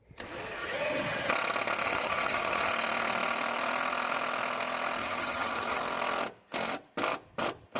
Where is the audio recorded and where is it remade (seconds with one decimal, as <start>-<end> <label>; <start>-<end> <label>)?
0.0-0.6 recorded; 0.6-1.3 remade; 1.3-1.8 recorded; 1.8-2.7 remade; 2.7-5.0 recorded; 5.0-5.8 remade; 5.8-7.8 recorded